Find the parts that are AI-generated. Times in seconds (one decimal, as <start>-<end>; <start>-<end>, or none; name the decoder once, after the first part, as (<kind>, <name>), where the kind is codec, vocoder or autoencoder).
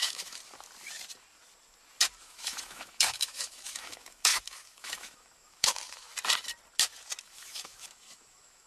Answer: 0.0-0.4 (autoencoder, DAC-VAE); 2.2-6.1; 7.2-8.7